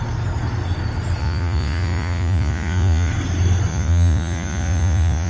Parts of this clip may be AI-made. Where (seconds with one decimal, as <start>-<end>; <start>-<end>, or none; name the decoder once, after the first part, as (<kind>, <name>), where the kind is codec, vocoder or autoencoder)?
1.2-3.1 (vocoder, Vocos); 3.7-5.3